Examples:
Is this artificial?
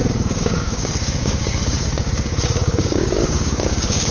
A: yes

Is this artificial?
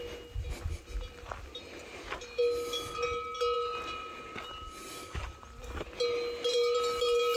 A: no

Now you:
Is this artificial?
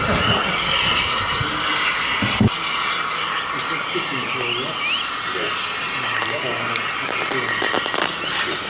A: no